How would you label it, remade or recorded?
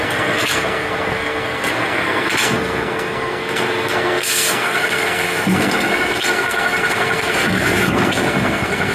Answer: remade